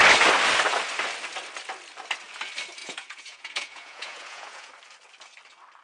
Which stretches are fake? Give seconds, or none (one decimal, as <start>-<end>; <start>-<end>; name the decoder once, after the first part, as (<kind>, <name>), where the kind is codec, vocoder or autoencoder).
2.8-4.7 (vocoder, Vocos)